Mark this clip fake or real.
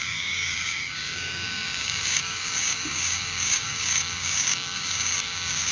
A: fake